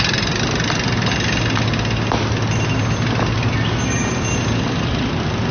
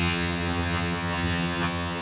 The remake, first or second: second